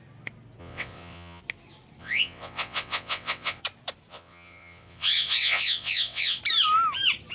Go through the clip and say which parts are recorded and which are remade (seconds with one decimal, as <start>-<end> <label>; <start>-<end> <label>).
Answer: 0.0-0.6 recorded; 0.6-1.4 remade; 1.4-2.0 recorded; 2.0-3.6 remade; 3.6-4.1 recorded; 4.1-6.4 remade; 6.4-7.3 recorded